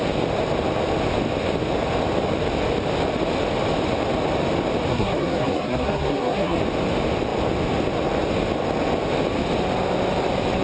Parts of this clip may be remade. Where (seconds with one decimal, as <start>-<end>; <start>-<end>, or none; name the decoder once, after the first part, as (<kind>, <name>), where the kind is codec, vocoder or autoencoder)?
4.9-6.6 (codec, SNAC)